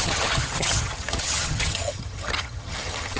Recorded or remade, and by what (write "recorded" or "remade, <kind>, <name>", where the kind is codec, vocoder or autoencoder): remade, vocoder, HiFi-GAN